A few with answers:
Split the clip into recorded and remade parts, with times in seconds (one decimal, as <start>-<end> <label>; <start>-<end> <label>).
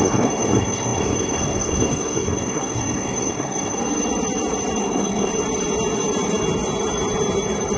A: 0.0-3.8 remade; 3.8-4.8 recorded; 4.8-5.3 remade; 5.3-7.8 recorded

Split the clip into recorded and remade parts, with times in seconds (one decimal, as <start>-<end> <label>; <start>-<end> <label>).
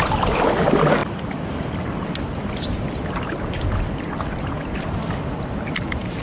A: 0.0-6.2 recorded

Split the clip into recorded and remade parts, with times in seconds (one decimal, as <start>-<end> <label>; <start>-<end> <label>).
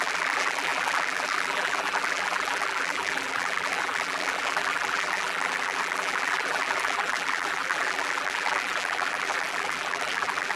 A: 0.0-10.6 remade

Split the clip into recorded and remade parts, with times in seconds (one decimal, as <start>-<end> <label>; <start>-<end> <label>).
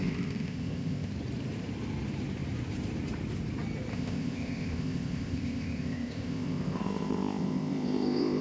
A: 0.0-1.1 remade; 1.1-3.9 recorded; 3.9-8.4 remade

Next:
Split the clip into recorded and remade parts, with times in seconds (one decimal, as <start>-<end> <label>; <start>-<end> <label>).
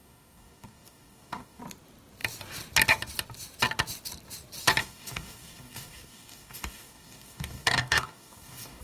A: 0.0-1.6 remade; 1.6-4.8 recorded; 4.8-8.8 remade